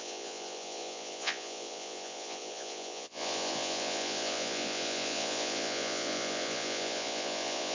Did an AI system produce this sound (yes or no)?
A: yes